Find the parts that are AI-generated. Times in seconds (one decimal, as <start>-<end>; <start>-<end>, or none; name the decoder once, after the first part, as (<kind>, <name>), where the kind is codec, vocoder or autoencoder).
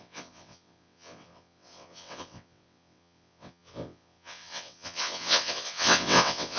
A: 0.0-6.6 (vocoder, WaveNeXt)